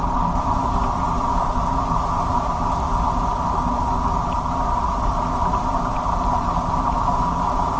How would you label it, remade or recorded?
recorded